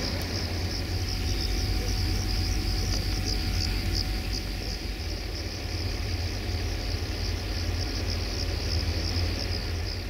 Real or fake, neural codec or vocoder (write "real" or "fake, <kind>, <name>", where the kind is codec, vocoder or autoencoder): real